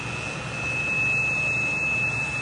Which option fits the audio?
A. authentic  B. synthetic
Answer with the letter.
A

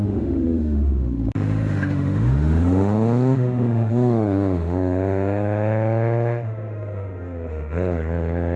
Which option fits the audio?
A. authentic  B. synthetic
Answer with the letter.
B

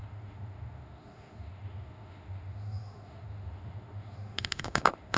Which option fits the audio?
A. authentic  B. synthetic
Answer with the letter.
B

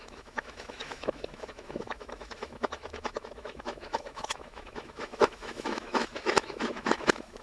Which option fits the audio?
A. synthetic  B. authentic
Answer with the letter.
A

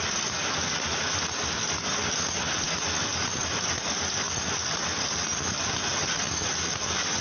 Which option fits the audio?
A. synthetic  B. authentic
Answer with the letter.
B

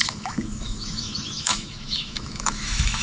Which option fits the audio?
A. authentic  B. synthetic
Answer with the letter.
B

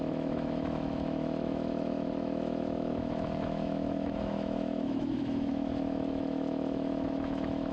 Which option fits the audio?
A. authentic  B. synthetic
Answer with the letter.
B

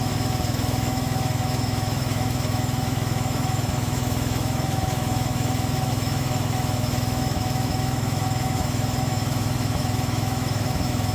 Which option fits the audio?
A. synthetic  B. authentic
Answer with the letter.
A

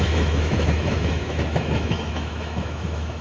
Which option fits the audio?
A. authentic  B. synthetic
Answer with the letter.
B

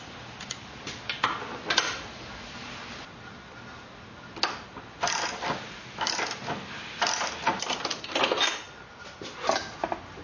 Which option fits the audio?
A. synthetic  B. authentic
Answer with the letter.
B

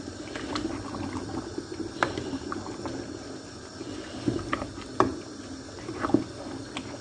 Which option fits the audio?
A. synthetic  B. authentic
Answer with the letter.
B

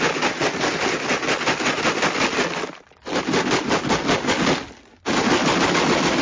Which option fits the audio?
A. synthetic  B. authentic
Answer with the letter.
B